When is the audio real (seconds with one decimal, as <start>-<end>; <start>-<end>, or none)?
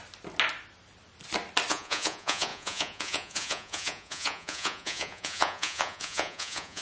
0.0-1.7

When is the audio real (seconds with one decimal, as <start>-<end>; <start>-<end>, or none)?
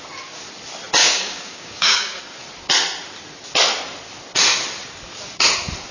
0.0-1.0; 2.2-5.9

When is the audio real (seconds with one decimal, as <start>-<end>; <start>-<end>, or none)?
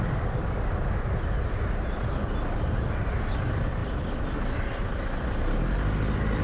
0.0-6.4